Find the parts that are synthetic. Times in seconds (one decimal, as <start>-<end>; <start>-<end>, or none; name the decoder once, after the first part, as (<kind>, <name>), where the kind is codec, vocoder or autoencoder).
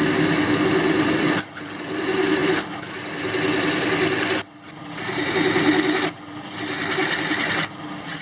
none